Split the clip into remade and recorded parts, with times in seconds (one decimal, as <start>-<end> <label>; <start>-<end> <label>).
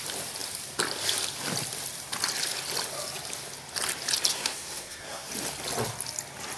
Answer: 0.0-4.3 recorded; 4.3-5.3 remade; 5.3-6.6 recorded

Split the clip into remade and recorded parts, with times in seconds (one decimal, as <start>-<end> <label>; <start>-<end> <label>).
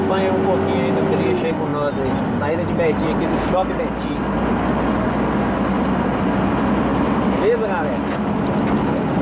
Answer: 0.0-9.2 recorded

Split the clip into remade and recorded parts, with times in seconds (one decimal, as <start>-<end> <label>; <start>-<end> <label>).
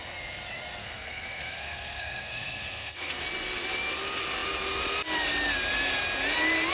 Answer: 0.0-0.8 recorded; 0.8-3.2 remade; 3.2-6.7 recorded